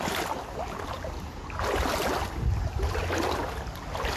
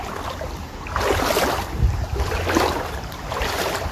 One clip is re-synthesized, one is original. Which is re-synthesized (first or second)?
second